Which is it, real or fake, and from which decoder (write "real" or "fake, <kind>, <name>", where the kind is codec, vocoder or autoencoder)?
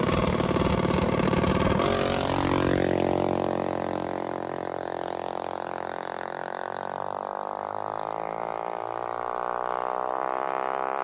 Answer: real